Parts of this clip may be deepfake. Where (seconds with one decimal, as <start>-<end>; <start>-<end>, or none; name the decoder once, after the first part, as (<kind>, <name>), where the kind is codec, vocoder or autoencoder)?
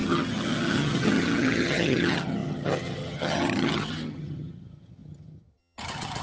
0.0-6.2 (vocoder, HiFi-GAN)